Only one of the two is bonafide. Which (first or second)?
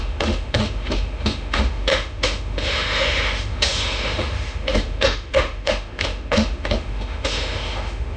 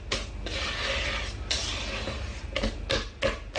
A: second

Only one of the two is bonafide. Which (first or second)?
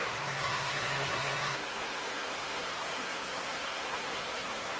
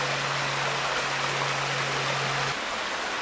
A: second